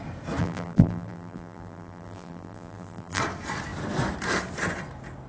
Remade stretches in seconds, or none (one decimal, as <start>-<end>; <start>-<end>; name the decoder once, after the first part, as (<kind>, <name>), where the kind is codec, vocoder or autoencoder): 0.4-3.2 (vocoder, BigVGAN v2)